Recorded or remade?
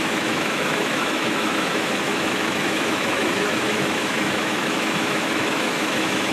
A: remade